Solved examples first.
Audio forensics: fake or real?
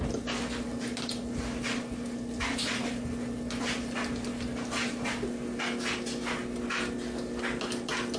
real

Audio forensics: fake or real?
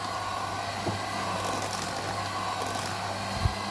real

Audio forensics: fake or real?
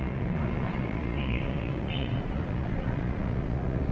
fake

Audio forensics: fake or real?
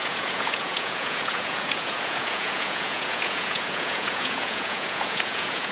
fake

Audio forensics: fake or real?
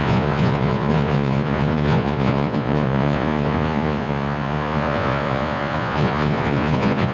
fake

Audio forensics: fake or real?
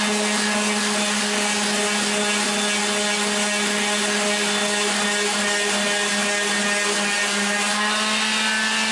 real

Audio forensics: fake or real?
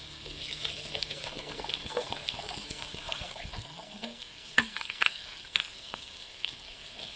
fake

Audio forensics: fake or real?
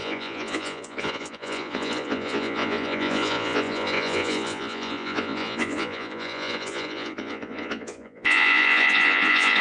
fake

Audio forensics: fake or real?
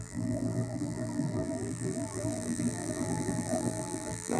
fake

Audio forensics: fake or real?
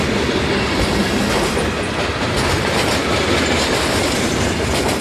real